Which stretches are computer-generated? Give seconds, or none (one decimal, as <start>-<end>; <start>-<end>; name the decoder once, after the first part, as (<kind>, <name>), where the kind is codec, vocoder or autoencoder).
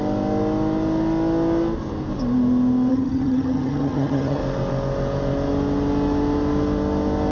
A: 2.9-4.4 (vocoder, HiFi-GAN)